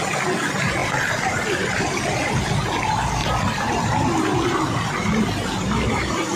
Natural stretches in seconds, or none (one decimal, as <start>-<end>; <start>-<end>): 0.0-0.8; 2.4-3.2; 4.5-6.4